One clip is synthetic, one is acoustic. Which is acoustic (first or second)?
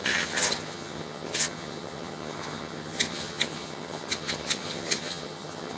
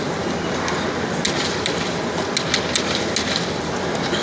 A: second